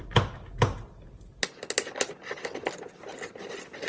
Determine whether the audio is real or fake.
real